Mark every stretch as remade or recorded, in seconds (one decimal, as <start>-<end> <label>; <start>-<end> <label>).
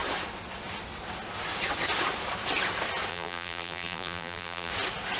0.0-3.1 recorded; 3.1-4.7 remade; 4.7-5.2 recorded